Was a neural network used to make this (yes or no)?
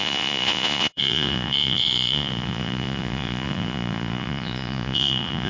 yes